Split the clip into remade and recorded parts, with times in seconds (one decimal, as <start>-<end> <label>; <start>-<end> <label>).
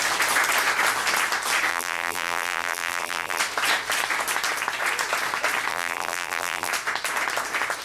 0.0-1.7 recorded; 1.7-3.4 remade; 3.4-5.7 recorded; 5.7-6.7 remade; 6.7-7.8 recorded